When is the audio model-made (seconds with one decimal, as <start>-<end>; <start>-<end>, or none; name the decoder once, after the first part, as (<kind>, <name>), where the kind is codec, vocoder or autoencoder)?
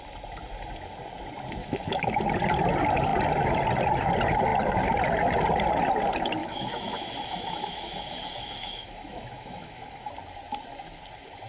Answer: 1.6-2.2 (autoencoder, DAC-VAE); 6.4-10.1